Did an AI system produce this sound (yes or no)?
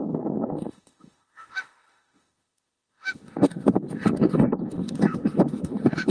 yes